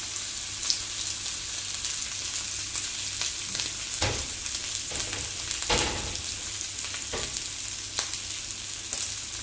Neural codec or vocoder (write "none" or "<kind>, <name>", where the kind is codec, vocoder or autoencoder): none